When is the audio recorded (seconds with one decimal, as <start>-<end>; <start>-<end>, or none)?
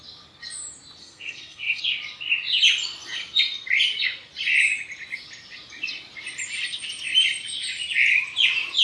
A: 0.0-1.0; 1.8-8.8